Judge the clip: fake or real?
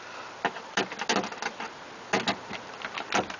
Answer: real